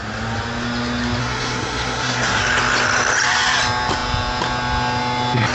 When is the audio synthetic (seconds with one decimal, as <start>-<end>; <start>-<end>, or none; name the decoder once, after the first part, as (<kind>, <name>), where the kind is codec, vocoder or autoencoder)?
1.2-2.4 (codec, SNAC)